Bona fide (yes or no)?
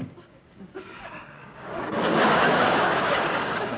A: no